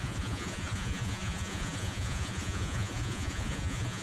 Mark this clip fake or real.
fake